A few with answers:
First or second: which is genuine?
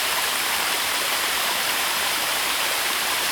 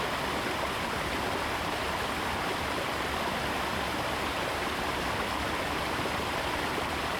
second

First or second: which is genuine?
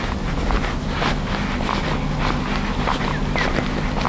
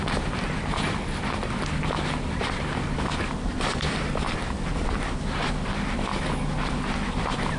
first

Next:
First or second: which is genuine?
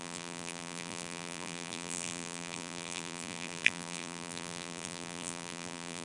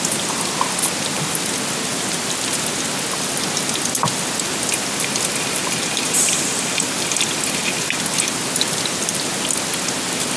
second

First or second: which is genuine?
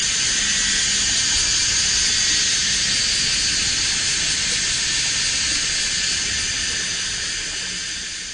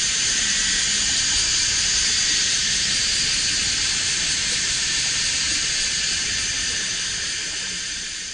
first